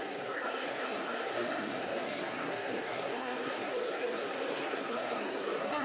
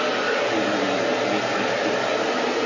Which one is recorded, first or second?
second